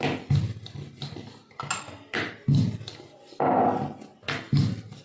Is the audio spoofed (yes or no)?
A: no